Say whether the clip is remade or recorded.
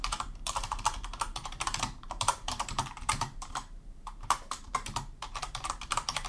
remade